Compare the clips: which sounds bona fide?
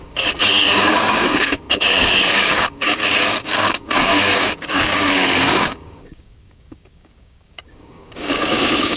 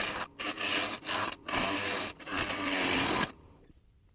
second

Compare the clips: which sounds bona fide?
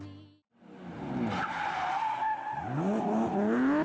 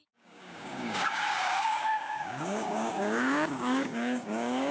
first